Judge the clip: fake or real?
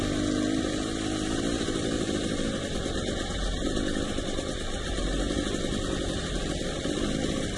real